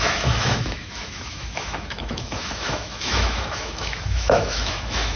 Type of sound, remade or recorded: remade